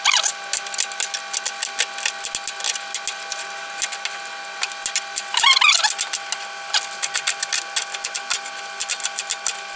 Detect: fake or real real